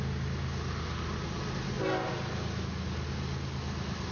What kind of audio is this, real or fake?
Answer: real